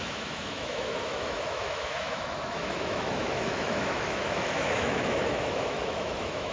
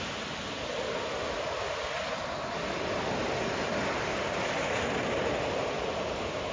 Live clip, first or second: second